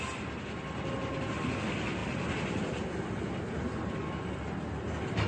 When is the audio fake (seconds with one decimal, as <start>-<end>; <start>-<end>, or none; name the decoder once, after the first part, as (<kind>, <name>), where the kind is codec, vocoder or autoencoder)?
none